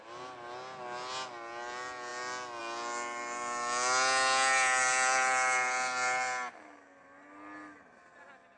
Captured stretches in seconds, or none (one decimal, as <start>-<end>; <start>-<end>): 0.0-8.6